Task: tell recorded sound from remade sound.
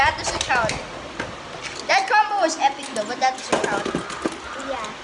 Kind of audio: recorded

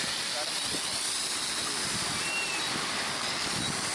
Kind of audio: recorded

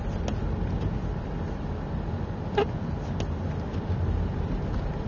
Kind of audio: recorded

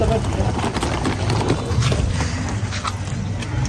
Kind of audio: recorded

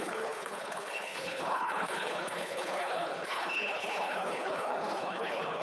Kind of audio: remade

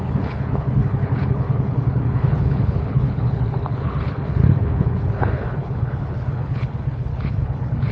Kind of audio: remade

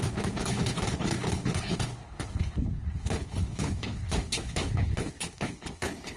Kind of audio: remade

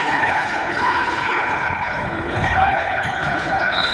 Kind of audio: remade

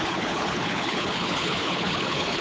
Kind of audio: remade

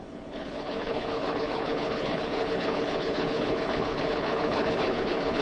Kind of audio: remade